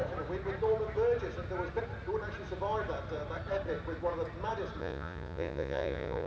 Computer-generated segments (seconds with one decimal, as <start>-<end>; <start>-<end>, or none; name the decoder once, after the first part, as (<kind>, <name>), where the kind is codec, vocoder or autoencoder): 4.8-6.3 (vocoder, Vocos)